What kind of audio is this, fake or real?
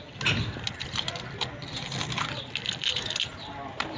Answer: real